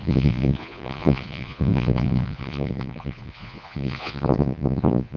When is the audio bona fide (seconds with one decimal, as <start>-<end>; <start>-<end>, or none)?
none